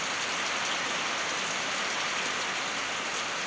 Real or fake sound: real